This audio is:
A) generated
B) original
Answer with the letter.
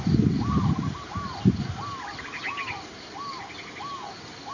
B